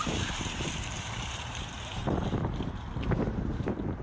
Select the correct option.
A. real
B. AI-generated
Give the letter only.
B